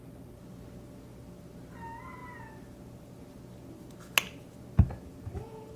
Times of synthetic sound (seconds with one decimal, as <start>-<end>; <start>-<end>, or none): none